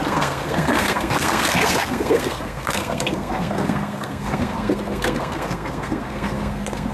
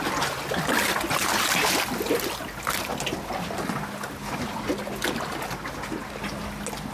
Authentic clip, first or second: second